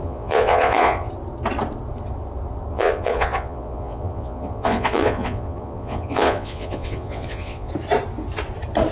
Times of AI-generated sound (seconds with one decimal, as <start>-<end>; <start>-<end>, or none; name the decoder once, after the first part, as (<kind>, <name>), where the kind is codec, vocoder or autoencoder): 0.0-1.1 (vocoder, Vocos); 2.7-7.7